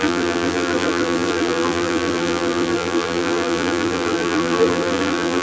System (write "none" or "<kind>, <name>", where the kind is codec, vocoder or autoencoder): vocoder, BigVGAN v2